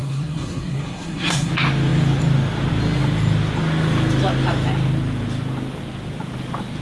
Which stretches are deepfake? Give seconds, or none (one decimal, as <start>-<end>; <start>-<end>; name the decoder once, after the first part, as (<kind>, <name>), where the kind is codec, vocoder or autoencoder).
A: 0.0-1.5 (codec, SNAC)